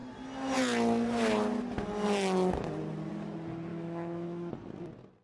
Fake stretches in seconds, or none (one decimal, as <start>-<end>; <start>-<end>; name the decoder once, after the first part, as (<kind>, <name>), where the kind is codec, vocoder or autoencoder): 3.7-4.5 (autoencoder, DAC-VAE)